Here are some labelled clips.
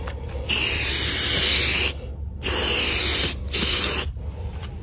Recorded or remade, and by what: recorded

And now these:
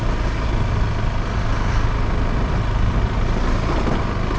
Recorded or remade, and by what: recorded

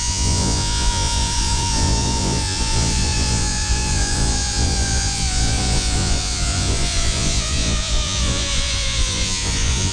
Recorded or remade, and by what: remade, vocoder, Vocos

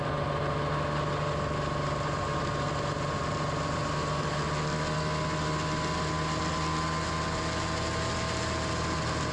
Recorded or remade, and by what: recorded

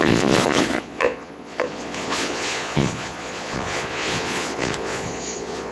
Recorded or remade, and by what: remade, vocoder, Vocos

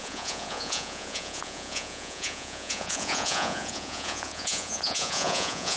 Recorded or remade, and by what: remade, vocoder, Vocos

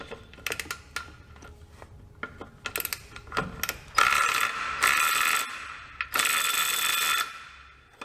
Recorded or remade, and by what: recorded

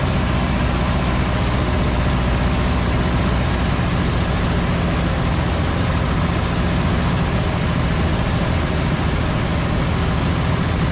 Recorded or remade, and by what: recorded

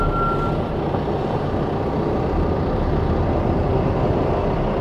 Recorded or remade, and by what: recorded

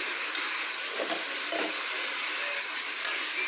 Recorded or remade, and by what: recorded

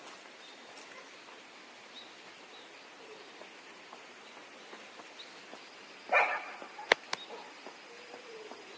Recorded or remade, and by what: recorded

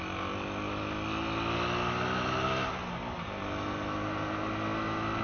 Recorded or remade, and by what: recorded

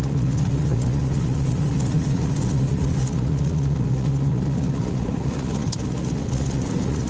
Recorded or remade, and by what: remade, vocoder, Vocos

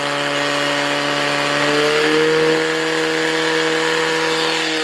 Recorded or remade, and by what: recorded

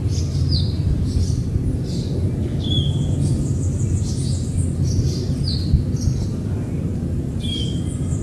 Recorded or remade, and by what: recorded